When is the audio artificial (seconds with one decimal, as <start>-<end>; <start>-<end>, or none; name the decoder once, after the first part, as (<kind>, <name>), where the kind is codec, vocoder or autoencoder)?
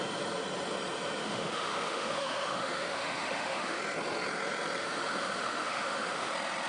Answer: 1.2-3.8 (autoencoder, DAC-VAE); 4.8-6.3